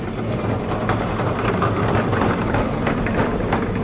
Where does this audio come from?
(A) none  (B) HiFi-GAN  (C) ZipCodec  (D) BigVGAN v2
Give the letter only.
A